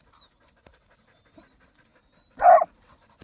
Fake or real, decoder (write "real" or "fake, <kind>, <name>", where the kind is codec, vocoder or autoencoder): real